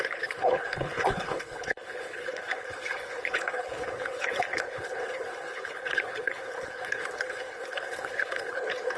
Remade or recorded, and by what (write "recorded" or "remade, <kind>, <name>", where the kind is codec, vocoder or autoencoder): remade, codec, HILCodec